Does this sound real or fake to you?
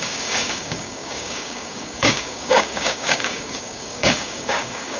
fake